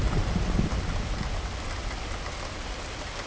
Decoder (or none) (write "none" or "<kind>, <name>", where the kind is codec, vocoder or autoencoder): none